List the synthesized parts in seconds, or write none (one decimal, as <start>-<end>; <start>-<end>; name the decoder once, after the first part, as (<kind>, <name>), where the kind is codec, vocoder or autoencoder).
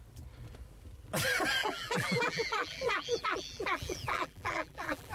1.6-5.1 (vocoder, BigVGAN v2)